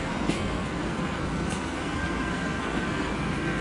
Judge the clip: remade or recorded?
remade